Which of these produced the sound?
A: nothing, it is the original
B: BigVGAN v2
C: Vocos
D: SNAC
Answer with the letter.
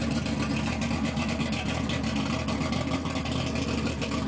A